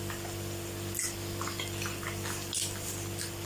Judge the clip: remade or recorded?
recorded